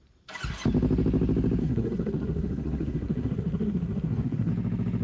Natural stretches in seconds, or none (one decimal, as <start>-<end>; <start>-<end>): 0.0-1.6; 4.5-5.0